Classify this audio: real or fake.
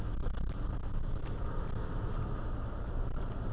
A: real